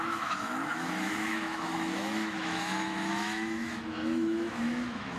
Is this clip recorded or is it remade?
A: remade